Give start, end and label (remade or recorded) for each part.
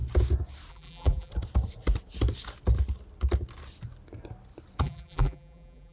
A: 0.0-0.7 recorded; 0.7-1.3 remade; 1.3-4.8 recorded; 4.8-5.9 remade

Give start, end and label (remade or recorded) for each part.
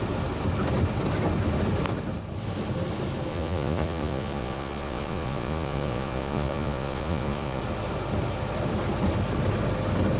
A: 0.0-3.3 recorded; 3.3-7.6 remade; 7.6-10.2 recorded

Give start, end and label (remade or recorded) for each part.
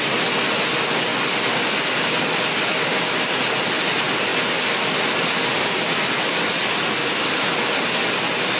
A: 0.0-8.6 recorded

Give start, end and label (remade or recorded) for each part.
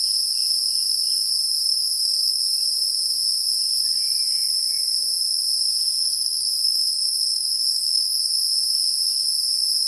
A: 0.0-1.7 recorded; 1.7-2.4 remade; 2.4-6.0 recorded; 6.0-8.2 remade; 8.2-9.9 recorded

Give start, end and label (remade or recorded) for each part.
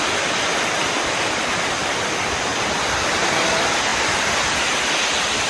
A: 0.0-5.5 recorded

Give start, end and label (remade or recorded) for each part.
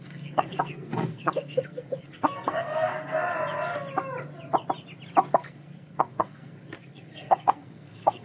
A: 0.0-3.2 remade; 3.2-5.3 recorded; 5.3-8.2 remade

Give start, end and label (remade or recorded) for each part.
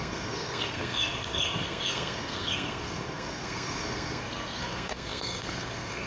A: 0.0-6.1 remade